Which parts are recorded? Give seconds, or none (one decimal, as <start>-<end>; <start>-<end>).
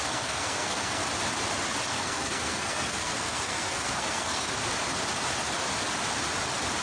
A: 1.0-1.9; 4.5-6.8